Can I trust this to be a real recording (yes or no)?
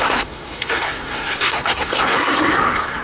no